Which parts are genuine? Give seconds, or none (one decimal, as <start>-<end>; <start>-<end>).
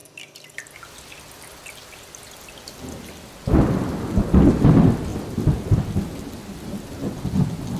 0.0-7.8